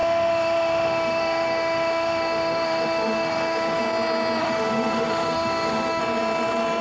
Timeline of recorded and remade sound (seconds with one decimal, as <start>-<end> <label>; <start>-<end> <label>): 0.0-3.8 remade; 3.8-4.4 recorded; 4.4-6.0 remade; 6.0-6.8 recorded